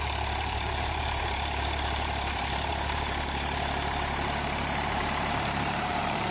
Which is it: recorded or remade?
remade